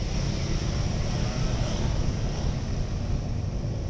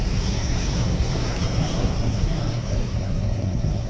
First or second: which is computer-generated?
second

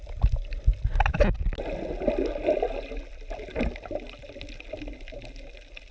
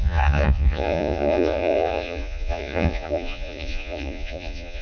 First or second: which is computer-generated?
second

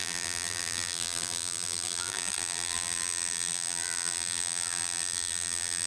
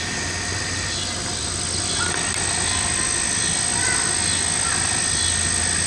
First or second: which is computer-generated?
first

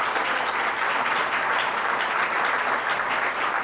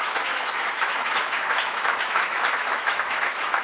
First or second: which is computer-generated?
second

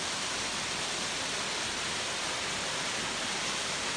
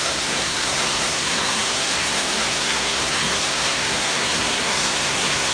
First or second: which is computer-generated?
second